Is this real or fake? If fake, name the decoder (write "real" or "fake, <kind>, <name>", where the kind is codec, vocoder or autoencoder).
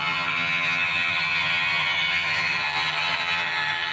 fake, vocoder, HiFi-GAN